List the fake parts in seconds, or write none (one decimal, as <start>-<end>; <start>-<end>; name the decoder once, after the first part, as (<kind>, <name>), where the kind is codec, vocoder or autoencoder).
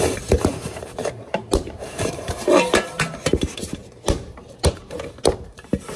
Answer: 0.0-6.0 (vocoder, BigVGAN v2)